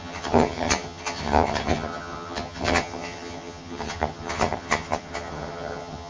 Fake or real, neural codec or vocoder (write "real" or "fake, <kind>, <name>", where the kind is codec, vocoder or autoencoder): fake, vocoder, HiFi-GAN